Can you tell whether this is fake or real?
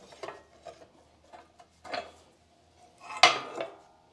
real